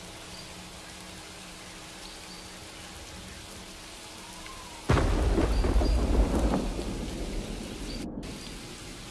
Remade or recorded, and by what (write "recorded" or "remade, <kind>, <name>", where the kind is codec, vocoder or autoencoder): recorded